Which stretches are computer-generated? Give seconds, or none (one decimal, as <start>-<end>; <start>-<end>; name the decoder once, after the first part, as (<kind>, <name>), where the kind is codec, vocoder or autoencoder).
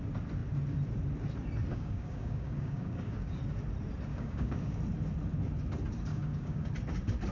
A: 1.7-3.4 (codec, DAC); 4.1-4.8; 6.1-6.7